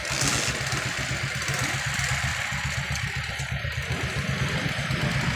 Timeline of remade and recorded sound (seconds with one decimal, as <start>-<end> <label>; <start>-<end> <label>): 0.0-5.4 recorded